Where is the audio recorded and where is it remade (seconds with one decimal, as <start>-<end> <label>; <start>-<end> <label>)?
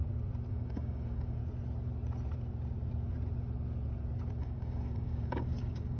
0.0-0.5 recorded; 0.5-1.4 remade; 1.4-4.4 recorded; 4.4-6.0 remade